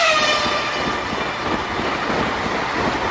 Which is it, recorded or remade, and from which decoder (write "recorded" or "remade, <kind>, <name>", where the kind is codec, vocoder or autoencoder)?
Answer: recorded